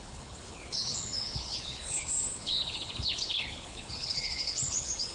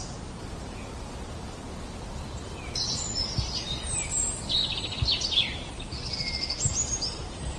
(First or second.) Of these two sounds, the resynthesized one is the first